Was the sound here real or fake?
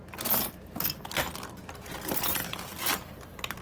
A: real